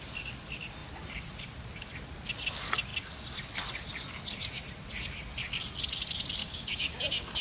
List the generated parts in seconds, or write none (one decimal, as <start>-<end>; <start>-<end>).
6.4-7.0